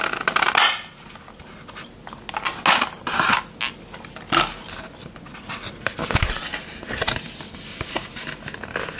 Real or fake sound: real